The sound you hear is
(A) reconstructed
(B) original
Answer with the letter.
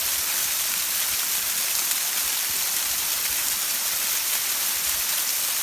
B